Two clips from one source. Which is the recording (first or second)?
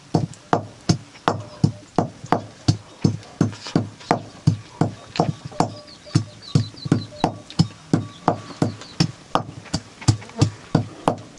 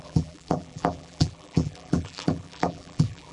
first